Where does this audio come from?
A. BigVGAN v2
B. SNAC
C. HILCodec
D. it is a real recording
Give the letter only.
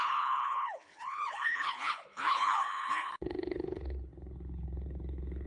C